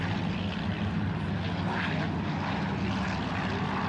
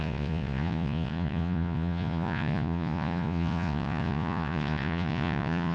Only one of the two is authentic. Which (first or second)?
first